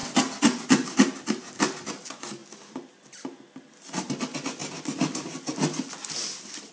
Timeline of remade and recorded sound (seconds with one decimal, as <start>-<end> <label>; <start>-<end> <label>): 0.0-6.7 recorded